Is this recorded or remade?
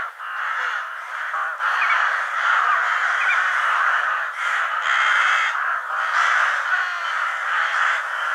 recorded